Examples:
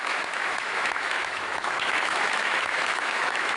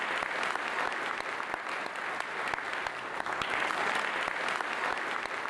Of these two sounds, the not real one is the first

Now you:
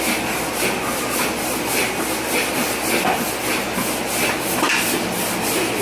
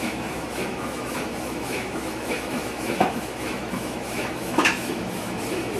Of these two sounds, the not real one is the second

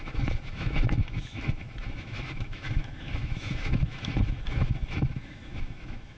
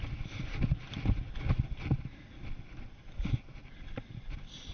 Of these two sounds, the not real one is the first